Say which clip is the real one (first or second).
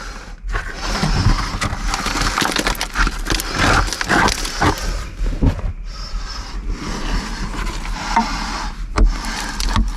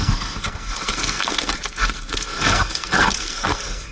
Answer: first